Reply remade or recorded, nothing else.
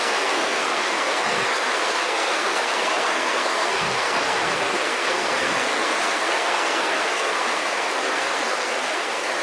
remade